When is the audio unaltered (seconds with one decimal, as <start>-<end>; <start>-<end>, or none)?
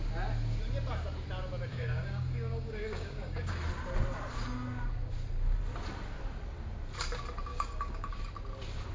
0.0-1.7; 3.6-7.5; 8.2-8.9